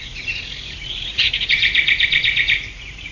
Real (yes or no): no